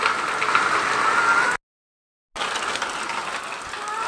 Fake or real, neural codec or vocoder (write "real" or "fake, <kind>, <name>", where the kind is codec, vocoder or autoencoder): real